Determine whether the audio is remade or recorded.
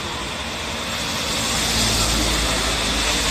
recorded